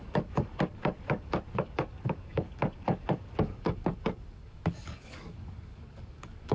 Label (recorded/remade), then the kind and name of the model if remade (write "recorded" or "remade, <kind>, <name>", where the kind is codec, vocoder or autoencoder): remade, codec, DAC